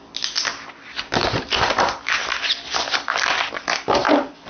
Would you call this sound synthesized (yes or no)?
no